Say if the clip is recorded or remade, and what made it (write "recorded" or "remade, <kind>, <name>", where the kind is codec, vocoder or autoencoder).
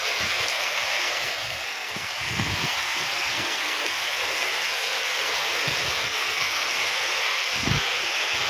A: remade, codec, SNAC